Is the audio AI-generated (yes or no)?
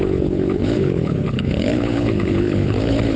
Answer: yes